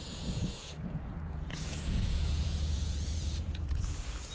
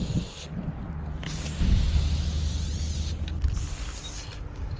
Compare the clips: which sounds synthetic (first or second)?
first